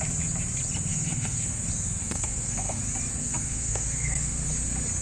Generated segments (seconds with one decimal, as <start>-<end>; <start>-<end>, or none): 0.9-1.6; 2.0-2.8; 3.2-4.4